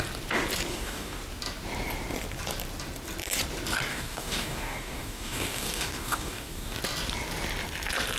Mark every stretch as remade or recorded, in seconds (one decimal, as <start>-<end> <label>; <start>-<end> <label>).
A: 0.0-0.7 recorded; 0.7-1.2 remade; 1.2-3.9 recorded; 3.9-6.8 remade; 6.8-8.2 recorded